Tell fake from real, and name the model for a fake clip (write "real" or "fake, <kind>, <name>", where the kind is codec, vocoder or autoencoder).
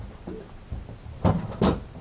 real